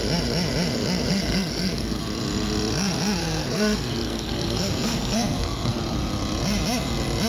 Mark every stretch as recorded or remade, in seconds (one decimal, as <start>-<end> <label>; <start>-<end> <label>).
0.0-1.1 recorded; 1.1-2.0 remade; 2.0-3.2 recorded; 3.2-5.8 remade; 5.8-7.3 recorded